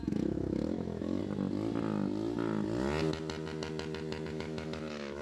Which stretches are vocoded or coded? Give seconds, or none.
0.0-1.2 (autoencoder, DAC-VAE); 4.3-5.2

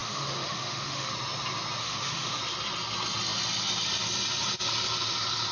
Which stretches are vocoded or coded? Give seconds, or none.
0.0-1.1 (autoencoder, DAC-VAE); 1.8-2.4

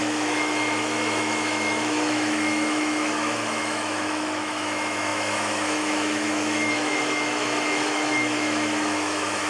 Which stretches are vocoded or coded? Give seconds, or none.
0.0-9.5 (autoencoder, DAC-VAE)

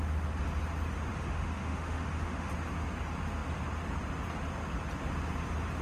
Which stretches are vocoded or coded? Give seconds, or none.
1.1-2.5 (autoencoder, DAC-VAE)

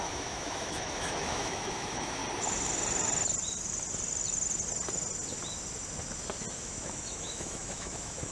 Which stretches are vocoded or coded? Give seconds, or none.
0.0-2.2 (autoencoder, DAC-VAE); 6.6-8.3

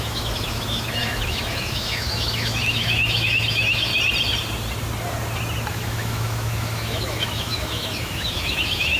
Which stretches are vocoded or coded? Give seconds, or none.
0.0-3.9 (autoencoder, DAC-VAE); 5.7-9.0

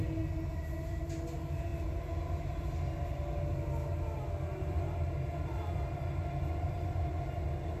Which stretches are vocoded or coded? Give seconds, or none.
none